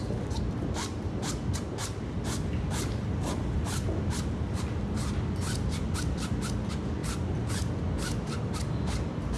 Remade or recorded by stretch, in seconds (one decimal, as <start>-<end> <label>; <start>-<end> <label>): 0.0-9.4 recorded